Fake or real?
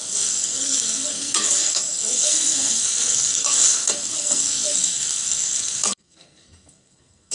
fake